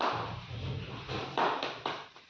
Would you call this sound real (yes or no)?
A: yes